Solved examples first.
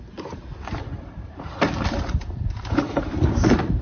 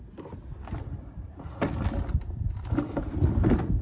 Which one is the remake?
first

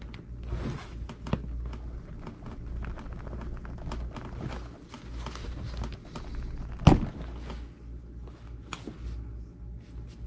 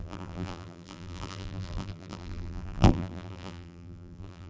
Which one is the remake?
second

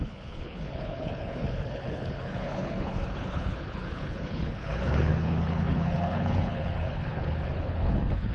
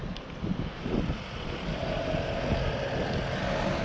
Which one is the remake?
first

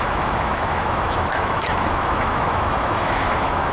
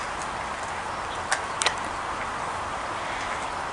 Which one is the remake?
first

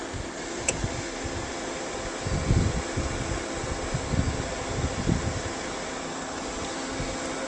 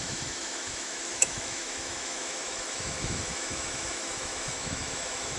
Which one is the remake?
second